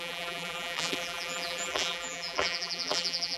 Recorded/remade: remade